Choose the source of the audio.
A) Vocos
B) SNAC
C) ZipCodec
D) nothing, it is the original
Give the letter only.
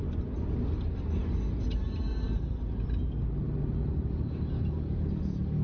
D